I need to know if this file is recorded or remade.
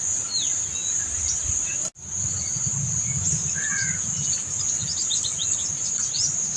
recorded